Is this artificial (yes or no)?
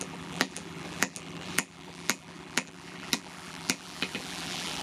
yes